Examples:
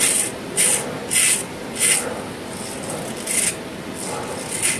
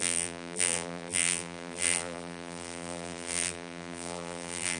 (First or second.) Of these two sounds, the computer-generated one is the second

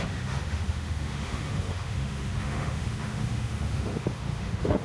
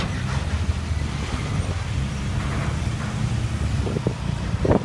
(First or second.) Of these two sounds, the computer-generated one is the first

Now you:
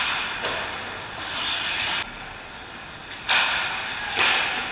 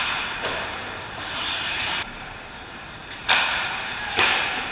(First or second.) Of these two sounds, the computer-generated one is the second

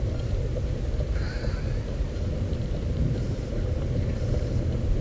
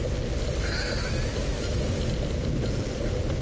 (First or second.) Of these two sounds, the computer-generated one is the first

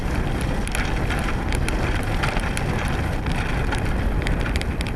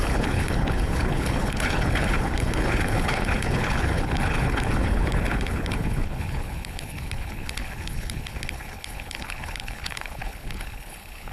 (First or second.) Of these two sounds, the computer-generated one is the second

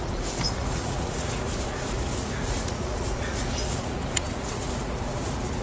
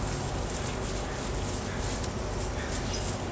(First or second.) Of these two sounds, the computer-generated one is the first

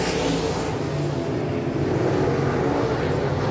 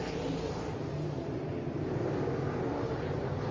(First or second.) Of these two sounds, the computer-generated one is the second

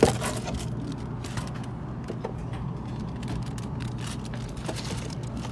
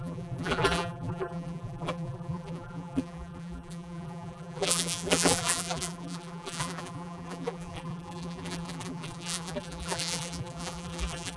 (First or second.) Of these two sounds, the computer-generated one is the second